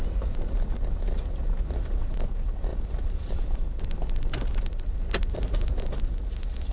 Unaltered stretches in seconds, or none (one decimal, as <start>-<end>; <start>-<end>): 0.0-2.7; 3.8-6.7

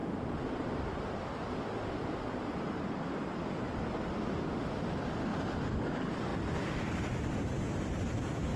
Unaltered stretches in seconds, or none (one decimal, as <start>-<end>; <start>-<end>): 4.5-5.3; 5.8-8.6

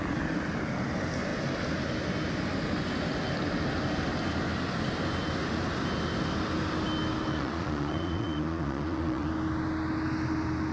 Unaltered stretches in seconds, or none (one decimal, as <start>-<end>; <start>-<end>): 0.0-7.3; 9.3-10.7

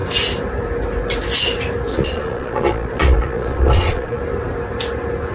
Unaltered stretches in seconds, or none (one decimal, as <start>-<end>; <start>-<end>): 0.0-1.9; 4.2-5.3

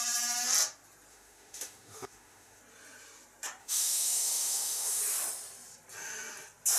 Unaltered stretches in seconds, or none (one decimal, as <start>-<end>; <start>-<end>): 0.0-1.1; 2.6-3.6; 5.0-6.8